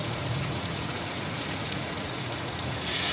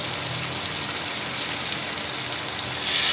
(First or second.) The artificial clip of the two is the first